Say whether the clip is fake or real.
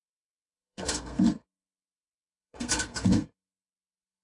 fake